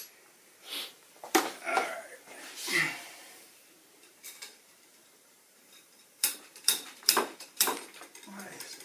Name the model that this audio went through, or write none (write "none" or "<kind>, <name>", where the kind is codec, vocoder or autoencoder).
vocoder, BigVGAN v2